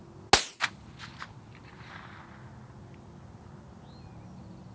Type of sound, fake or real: real